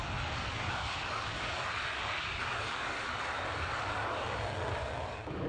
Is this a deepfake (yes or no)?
yes